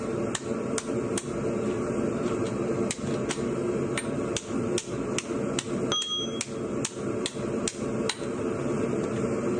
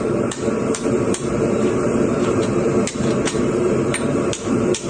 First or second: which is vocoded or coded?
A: second